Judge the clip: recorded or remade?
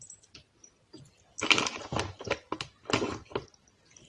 recorded